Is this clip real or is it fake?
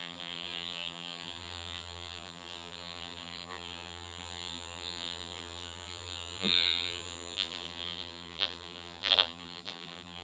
fake